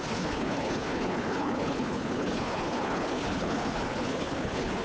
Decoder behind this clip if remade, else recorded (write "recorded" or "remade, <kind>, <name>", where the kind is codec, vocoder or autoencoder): remade, codec, HILCodec